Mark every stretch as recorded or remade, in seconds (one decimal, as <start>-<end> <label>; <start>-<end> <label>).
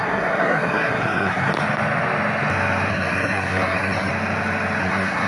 0.0-1.5 remade; 1.5-2.9 recorded; 2.9-4.1 remade; 4.1-4.8 recorded; 4.8-5.3 remade